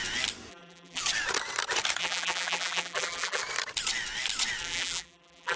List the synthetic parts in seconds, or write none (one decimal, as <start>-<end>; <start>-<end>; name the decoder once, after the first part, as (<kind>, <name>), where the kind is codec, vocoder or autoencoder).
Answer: 0.5-1.0 (vocoder, BigVGAN v2); 2.0-3.4; 4.6-5.6